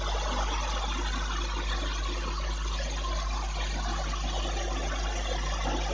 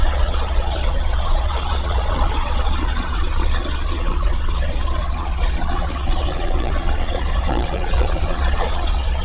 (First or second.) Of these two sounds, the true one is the first